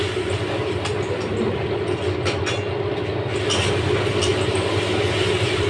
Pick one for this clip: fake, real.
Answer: real